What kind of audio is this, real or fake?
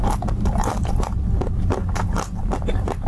real